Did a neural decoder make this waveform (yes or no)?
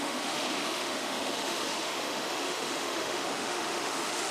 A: yes